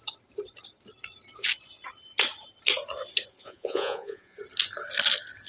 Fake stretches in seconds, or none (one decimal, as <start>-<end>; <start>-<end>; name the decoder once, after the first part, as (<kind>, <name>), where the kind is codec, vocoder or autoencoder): 3.3-4.4 (vocoder, Vocos)